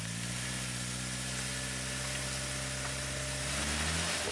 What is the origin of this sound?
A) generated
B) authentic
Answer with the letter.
B